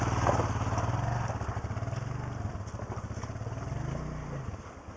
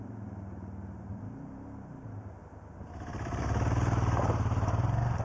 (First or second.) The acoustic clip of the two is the first